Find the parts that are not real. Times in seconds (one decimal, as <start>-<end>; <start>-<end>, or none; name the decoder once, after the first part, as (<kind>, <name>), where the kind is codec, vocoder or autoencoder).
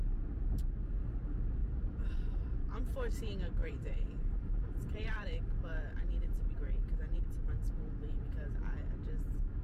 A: 1.6-2.8 (vocoder, BigVGAN v2); 3.6-8.5